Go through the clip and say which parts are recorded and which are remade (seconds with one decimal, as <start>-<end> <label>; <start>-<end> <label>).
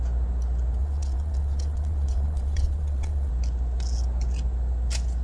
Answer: 0.0-0.8 recorded; 0.8-3.3 remade; 3.3-5.2 recorded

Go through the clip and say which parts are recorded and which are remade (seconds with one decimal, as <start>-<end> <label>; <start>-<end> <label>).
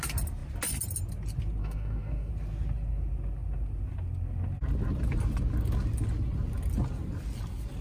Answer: 0.0-1.6 recorded; 1.6-2.3 remade; 2.3-7.8 recorded